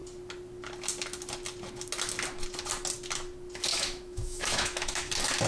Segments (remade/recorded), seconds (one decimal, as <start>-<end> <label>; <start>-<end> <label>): 0.0-3.7 recorded; 3.7-5.1 remade; 5.1-5.5 recorded